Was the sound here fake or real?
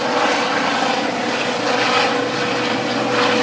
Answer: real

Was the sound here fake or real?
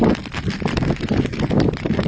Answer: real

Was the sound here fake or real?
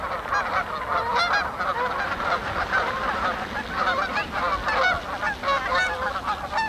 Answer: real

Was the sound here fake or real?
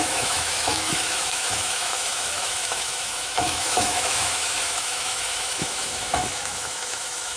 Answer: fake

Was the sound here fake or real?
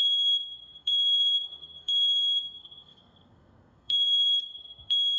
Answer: fake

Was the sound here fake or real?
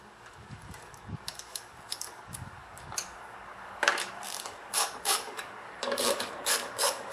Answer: fake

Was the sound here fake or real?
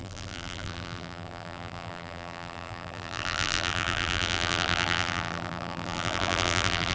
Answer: fake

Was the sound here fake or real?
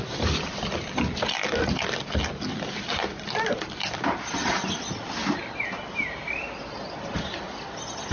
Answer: real